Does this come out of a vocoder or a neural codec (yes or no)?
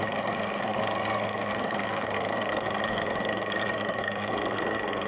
yes